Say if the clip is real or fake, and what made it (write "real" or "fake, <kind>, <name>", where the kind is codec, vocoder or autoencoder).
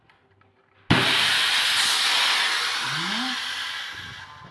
real